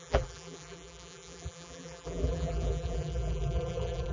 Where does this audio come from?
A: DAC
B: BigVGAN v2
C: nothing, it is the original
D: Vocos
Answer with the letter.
B